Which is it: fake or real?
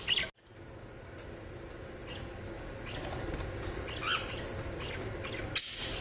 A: real